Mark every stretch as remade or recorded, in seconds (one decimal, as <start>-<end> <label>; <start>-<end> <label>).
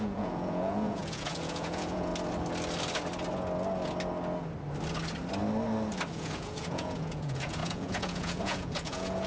0.0-2.1 remade; 2.1-6.1 recorded; 6.1-9.3 remade